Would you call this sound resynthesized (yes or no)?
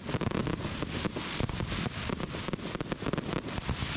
yes